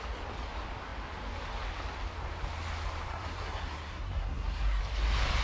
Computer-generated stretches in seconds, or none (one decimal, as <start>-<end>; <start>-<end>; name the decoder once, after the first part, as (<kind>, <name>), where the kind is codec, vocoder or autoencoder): 3.1-4.8 (codec, SNAC)